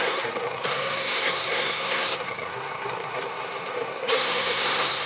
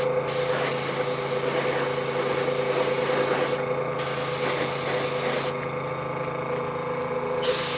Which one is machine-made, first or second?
first